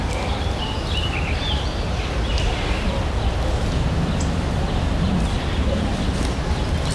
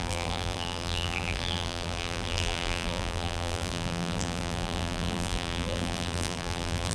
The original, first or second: first